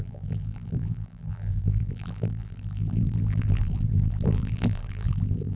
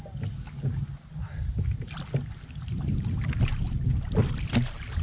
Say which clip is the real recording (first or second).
second